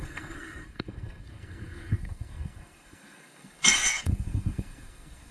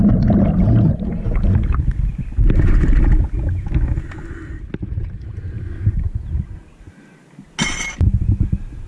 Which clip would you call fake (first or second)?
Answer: first